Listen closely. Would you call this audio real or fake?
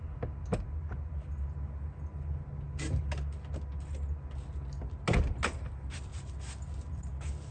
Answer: real